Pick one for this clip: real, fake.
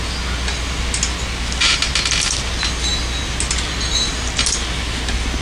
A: real